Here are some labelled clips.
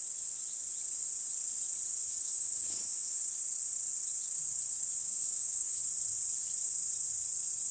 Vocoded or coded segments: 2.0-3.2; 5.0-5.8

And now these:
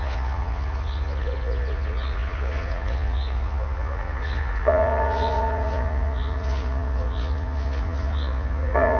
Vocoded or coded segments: 0.0-9.0

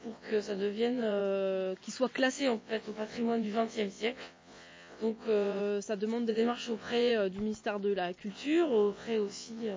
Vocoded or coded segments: 0.0-1.2; 2.3-5.6; 6.3-7.1; 8.3-9.8

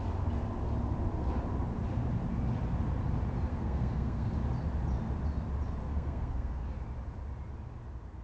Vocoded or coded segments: 3.5-4.3; 5.9-6.6

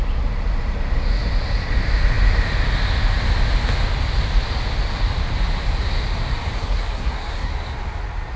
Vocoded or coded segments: 6.6-7.5